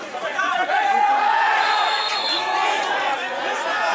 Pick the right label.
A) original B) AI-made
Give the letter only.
B